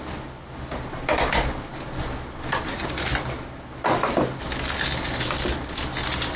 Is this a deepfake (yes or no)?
no